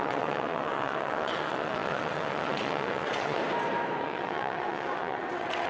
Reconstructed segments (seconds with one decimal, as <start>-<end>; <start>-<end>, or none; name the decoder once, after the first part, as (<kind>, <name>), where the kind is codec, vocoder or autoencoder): 0.0-3.4 (vocoder, WaveNeXt); 4.0-5.7